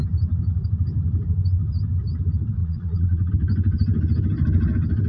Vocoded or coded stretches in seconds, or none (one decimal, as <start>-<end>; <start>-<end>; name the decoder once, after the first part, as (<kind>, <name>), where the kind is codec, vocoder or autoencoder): 2.6-3.3 (vocoder, Vocos)